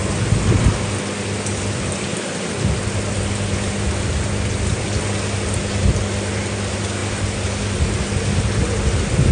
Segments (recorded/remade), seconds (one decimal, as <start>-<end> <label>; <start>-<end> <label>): 0.0-9.3 recorded